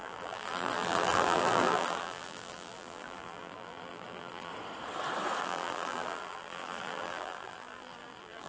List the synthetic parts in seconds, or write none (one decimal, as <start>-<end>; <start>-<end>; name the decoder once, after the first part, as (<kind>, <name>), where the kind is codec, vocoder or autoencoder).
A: 0.0-4.5 (vocoder, BigVGAN v2); 5.4-8.5